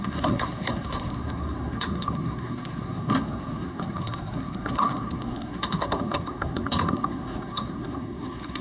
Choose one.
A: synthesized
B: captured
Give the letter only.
A